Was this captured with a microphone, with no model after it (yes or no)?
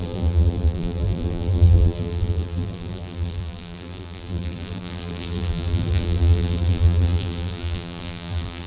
no